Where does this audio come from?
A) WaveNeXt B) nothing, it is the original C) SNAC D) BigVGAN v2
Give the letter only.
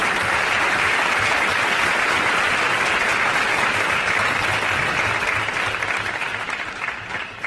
B